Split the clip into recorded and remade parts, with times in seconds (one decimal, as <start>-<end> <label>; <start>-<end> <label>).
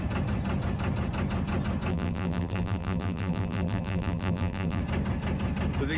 0.0-1.9 recorded; 1.9-4.8 remade; 4.8-6.0 recorded